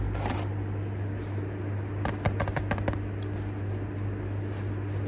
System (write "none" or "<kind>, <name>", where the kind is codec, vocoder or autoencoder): none